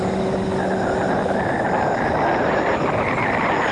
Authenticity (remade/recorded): recorded